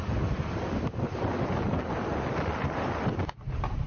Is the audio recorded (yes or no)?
yes